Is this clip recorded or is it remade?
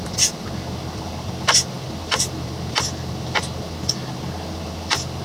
recorded